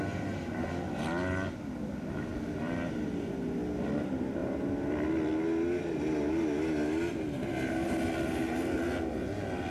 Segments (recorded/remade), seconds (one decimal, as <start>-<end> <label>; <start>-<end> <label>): 0.0-9.7 recorded